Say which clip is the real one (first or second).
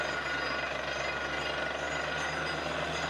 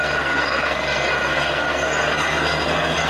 first